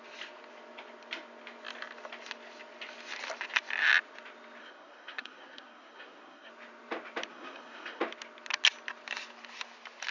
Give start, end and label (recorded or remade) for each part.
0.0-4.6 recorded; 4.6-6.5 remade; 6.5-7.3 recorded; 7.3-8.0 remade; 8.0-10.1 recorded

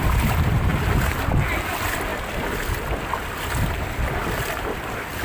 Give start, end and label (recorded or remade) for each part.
0.0-0.7 remade; 0.7-1.5 recorded; 1.5-2.1 remade; 2.1-3.8 recorded; 3.8-5.2 remade

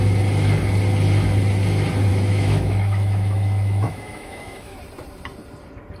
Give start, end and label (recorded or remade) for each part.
0.0-2.1 recorded; 2.1-4.8 remade; 4.8-6.0 recorded